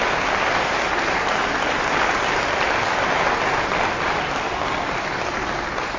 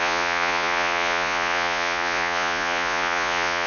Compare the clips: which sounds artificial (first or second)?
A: second